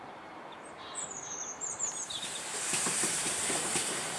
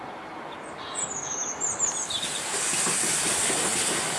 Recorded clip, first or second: second